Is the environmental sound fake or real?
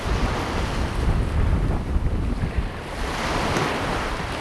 real